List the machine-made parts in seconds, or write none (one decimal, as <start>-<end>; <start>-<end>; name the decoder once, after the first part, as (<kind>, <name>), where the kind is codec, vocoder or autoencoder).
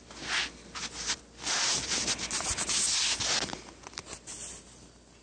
none